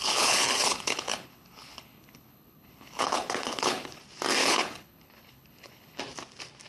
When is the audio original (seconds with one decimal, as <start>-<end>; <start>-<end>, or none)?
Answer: 4.0-4.4; 6.0-6.7